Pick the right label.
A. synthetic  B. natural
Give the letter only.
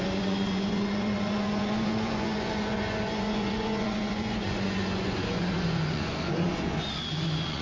A